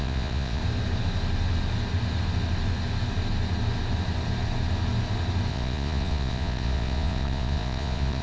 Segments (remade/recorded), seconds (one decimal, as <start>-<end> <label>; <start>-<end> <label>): 0.0-0.6 remade; 0.6-5.5 recorded; 5.5-8.2 remade

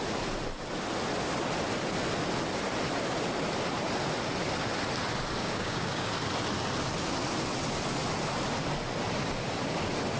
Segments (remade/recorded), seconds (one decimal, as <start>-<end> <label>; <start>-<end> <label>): 0.0-5.4 recorded; 5.4-6.1 remade; 6.1-10.2 recorded

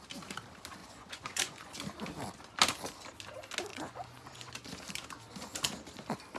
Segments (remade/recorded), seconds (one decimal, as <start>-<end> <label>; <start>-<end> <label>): 0.0-0.8 recorded; 0.8-1.7 remade; 1.7-3.7 recorded; 3.7-4.5 remade; 4.5-6.4 recorded

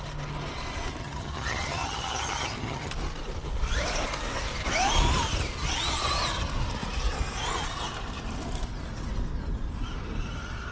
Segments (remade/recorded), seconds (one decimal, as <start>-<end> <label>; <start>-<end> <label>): 0.0-1.0 recorded; 1.0-2.9 remade; 2.9-10.7 recorded

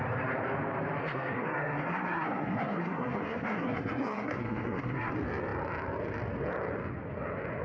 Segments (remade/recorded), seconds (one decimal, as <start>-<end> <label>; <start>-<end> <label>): 0.0-1.0 recorded; 1.0-5.1 remade; 5.1-7.6 recorded

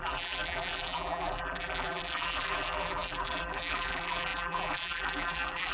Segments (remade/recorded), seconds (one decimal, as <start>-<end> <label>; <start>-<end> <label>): 0.0-5.7 remade

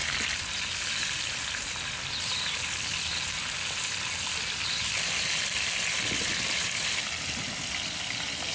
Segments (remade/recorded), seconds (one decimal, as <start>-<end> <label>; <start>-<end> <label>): 0.0-8.5 recorded